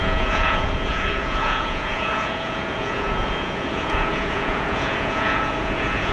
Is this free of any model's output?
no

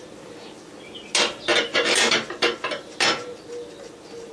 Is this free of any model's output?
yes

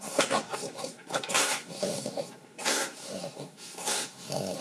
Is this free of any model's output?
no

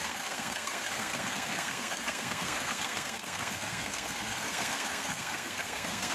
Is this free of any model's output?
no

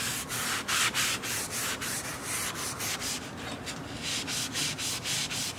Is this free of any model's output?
no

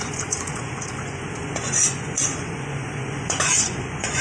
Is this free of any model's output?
no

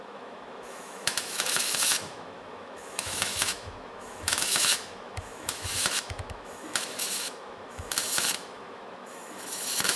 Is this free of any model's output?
no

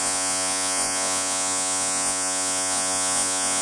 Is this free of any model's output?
no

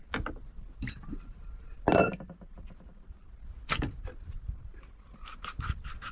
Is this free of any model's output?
yes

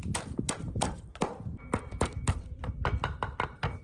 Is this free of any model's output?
no